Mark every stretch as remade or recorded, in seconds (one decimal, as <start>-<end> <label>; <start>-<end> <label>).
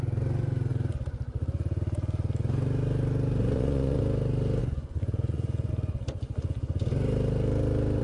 0.0-3.4 recorded; 3.4-4.0 remade; 4.0-4.6 recorded; 4.6-5.7 remade; 5.7-8.0 recorded